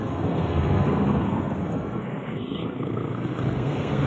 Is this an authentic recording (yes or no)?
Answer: no